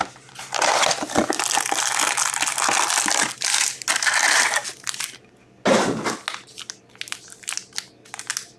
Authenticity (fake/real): real